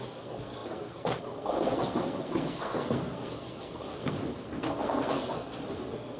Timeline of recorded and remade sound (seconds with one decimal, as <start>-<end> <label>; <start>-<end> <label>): 0.0-6.2 remade